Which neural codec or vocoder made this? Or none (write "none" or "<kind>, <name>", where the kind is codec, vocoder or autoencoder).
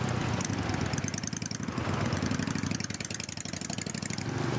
none